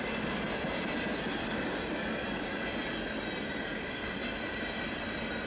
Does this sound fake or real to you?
real